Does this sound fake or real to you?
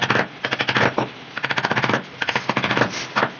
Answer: real